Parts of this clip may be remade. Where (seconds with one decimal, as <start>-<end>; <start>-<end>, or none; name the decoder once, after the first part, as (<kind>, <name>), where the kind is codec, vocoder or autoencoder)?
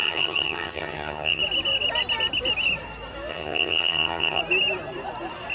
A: 0.0-1.4 (vocoder, HiFi-GAN); 3.3-4.4